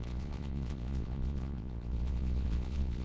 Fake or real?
fake